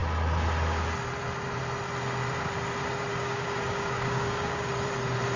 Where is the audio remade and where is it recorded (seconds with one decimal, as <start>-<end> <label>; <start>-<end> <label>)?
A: 0.0-3.1 recorded; 3.1-4.7 remade; 4.7-5.4 recorded